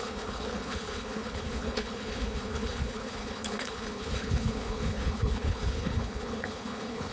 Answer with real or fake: fake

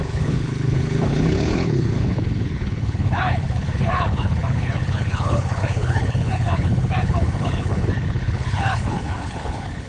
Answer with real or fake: fake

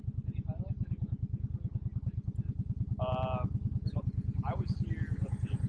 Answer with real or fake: real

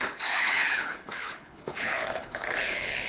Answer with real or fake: fake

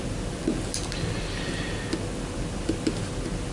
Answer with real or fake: real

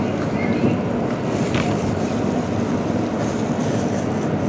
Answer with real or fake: real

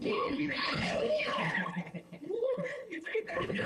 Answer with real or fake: fake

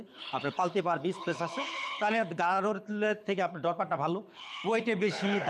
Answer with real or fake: fake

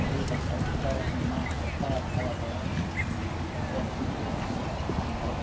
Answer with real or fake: real